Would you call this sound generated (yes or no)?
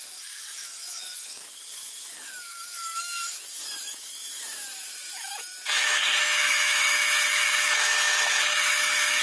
yes